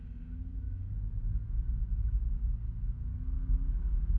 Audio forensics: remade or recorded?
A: recorded